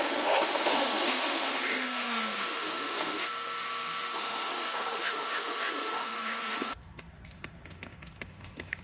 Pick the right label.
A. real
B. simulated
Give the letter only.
B